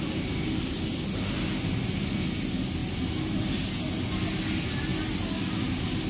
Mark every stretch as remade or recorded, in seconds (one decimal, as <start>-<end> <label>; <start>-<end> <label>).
0.0-6.1 recorded